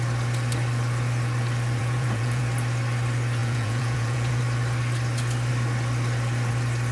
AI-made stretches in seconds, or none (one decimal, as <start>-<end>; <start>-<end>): 1.8-2.4; 3.4-4.4